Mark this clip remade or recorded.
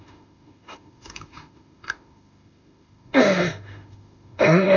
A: remade